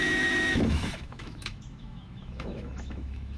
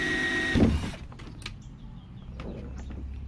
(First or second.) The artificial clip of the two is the first